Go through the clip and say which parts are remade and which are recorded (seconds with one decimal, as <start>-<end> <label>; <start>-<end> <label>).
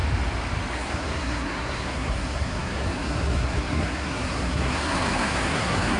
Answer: 0.0-0.7 recorded; 0.7-6.0 remade